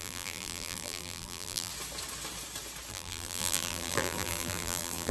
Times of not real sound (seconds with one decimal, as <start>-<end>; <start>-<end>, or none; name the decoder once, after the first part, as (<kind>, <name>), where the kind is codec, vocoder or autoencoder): 0.0-1.7 (vocoder, BigVGAN v2); 2.9-5.1